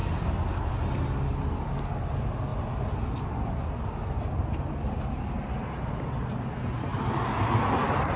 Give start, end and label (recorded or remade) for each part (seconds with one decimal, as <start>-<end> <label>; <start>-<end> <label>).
0.0-8.2 recorded